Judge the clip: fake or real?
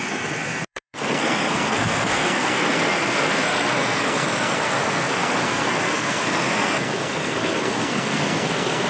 fake